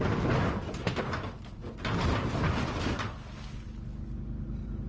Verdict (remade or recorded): recorded